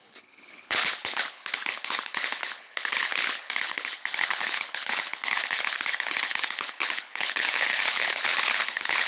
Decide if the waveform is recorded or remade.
remade